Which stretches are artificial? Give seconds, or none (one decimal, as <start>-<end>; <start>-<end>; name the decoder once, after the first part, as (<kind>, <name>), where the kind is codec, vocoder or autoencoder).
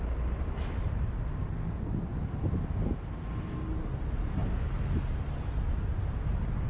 none